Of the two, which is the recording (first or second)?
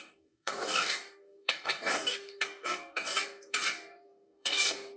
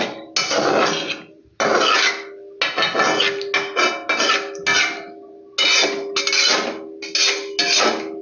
second